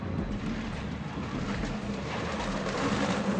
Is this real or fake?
fake